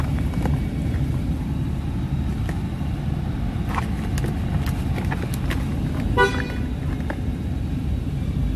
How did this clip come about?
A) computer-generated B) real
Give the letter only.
B